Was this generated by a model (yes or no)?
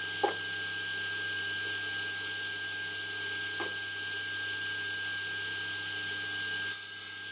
no